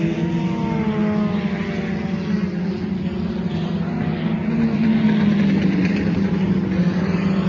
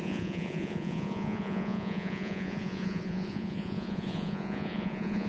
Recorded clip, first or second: first